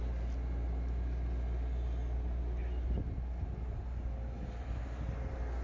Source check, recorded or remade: recorded